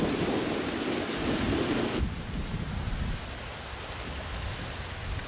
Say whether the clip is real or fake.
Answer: real